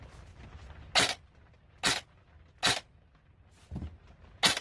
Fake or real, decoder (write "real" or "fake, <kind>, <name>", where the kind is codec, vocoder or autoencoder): real